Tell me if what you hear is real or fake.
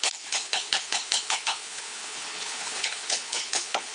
fake